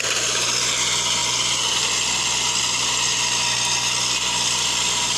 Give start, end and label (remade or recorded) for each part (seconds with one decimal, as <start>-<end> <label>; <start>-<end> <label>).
0.0-5.2 recorded